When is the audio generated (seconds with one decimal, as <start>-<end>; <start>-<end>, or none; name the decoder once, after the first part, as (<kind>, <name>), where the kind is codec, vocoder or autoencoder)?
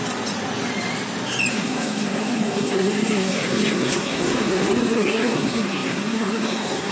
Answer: 1.5-6.9 (codec, SNAC)